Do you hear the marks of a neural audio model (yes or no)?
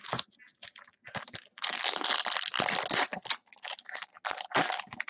no